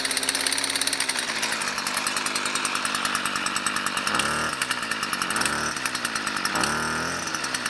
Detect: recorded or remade recorded